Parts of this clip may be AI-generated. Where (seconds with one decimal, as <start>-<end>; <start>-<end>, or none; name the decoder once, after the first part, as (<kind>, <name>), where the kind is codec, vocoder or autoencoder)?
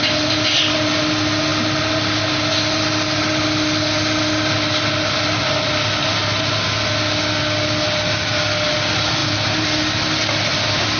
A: none